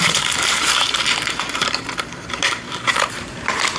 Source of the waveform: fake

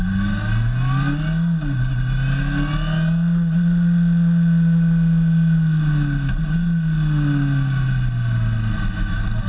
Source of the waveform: real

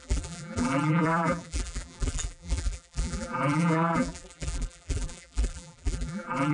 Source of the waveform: fake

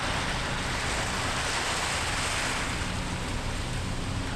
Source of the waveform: real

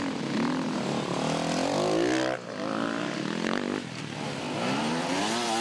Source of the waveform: real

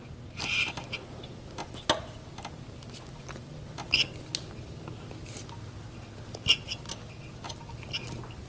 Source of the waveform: real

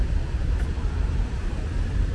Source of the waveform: real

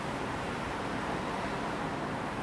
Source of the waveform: fake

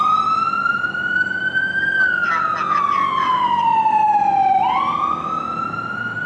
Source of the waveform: real